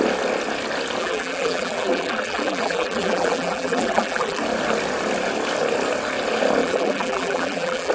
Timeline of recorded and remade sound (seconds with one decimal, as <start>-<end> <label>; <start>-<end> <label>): 0.0-1.0 recorded; 1.0-4.4 remade; 4.4-6.6 recorded; 6.6-7.9 remade